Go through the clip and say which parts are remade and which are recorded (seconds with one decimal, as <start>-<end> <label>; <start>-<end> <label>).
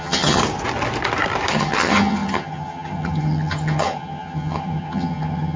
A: 0.0-0.4 remade; 0.4-1.5 recorded; 1.5-5.6 remade